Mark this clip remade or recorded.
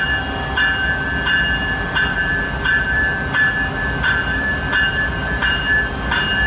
recorded